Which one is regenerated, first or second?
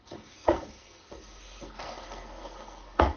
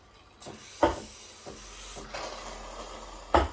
first